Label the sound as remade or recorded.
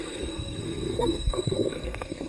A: remade